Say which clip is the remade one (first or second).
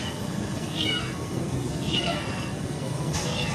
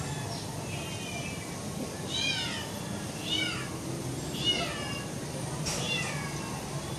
first